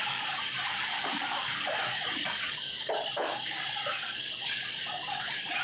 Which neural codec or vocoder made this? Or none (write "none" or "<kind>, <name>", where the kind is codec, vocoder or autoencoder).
codec, DAC